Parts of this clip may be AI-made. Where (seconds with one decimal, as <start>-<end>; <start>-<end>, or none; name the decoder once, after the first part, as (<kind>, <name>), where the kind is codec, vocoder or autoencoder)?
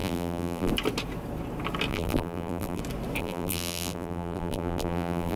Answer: 0.0-0.7 (vocoder, BigVGAN v2); 1.9-2.8; 3.2-5.4